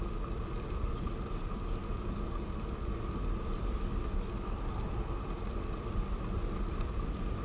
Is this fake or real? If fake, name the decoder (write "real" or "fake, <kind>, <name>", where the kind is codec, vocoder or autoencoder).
real